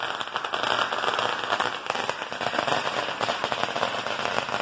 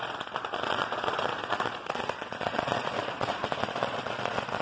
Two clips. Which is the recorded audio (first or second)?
first